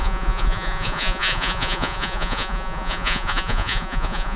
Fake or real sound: fake